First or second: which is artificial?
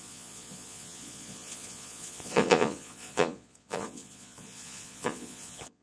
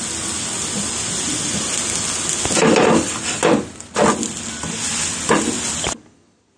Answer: first